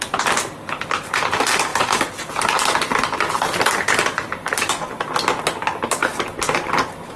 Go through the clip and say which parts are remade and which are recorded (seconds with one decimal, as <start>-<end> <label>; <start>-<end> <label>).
0.0-7.2 recorded